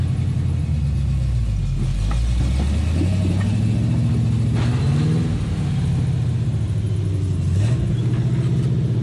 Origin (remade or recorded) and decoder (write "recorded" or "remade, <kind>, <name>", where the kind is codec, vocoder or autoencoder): recorded